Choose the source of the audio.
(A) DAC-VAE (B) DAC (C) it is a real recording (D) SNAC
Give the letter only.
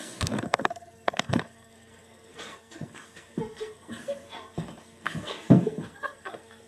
D